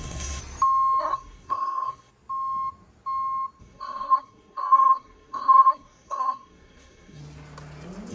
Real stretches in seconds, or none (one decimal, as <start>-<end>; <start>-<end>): 0.4-1.0; 2.1-3.6; 7.2-8.1